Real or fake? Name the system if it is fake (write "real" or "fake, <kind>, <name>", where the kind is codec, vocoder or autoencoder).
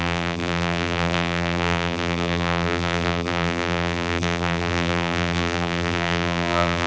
fake, vocoder, BigVGAN v2